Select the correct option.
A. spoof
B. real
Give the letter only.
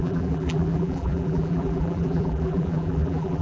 A